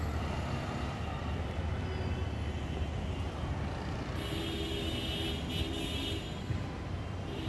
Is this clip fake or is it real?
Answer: real